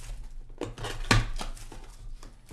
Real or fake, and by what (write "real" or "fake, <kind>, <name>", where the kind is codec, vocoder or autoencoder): real